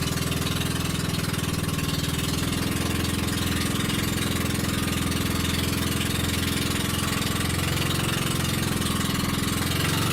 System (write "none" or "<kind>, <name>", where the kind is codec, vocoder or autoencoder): none